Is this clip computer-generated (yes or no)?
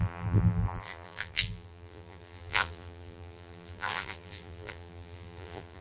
yes